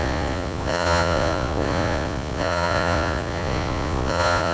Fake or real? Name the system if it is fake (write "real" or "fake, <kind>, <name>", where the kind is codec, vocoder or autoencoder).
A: fake, vocoder, Vocos